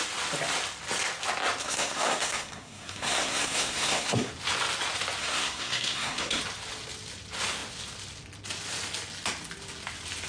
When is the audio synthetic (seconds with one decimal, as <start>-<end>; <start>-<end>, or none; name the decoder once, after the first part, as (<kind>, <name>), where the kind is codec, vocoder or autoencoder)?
1.6-4.3 (codec, SNAC); 5.2-6.4